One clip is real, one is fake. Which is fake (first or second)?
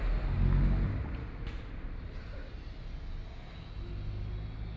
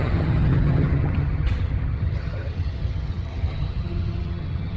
second